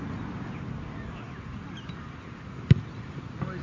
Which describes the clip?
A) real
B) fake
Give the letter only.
A